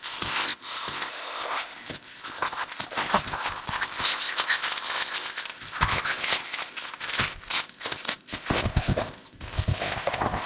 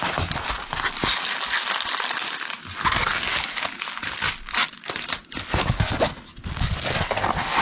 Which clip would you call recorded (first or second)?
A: second